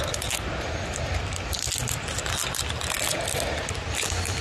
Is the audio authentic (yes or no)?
yes